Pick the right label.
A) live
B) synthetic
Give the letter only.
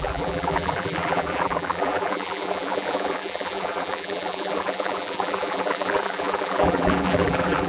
B